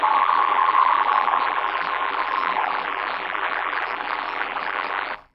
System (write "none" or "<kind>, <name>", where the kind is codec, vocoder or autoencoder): vocoder, BigVGAN v2